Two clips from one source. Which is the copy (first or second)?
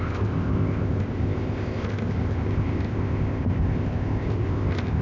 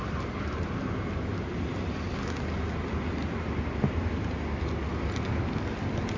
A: first